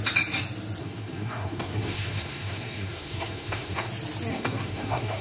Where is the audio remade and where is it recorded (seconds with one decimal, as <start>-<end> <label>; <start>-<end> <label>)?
0.0-0.8 recorded; 0.8-3.9 remade; 3.9-4.3 recorded; 4.3-5.2 remade